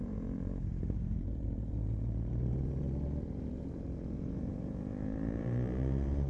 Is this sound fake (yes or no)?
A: yes